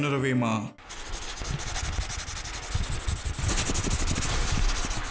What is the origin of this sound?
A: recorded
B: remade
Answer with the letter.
A